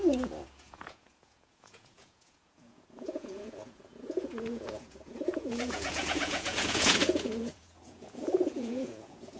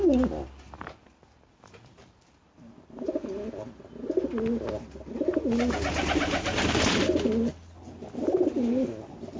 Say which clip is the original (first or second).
second